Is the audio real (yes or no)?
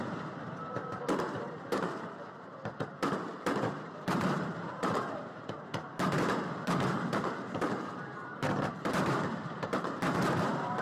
no